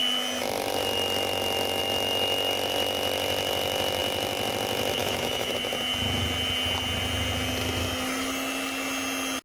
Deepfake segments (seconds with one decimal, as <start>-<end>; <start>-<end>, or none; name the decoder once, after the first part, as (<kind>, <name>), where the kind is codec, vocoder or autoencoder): 5.0-5.5 (autoencoder, DAC-VAE)